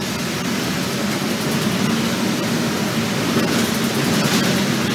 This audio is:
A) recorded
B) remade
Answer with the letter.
A